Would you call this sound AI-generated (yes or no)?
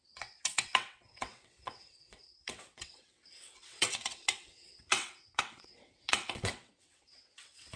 yes